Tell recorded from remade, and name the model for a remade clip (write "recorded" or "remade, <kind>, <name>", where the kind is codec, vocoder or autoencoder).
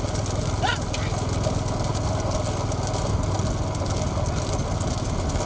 recorded